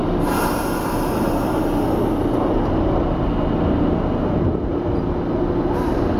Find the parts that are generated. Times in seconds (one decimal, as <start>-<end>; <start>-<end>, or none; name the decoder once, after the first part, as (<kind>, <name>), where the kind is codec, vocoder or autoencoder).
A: none